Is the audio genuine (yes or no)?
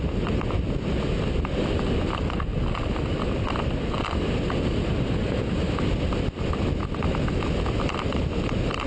yes